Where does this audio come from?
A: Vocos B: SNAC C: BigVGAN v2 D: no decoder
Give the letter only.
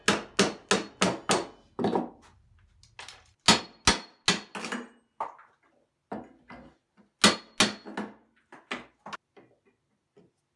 D